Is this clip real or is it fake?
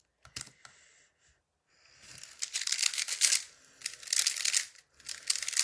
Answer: real